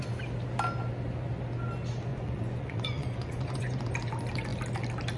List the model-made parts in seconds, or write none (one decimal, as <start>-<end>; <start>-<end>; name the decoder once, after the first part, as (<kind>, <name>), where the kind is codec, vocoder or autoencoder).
2.1-3.8 (vocoder, Vocos)